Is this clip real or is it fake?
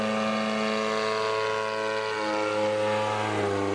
real